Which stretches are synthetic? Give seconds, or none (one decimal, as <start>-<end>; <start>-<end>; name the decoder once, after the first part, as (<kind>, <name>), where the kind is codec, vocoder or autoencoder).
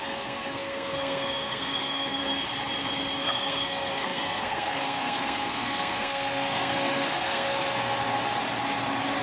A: 0.0-2.2 (codec, SNAC); 3.2-7.6